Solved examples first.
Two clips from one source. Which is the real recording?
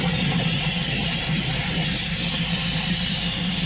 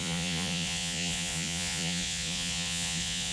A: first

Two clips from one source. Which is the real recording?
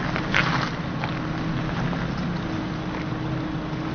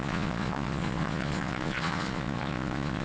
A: first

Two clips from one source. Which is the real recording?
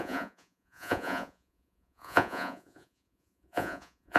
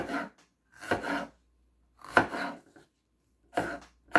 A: second